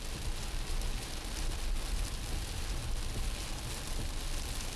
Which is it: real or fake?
real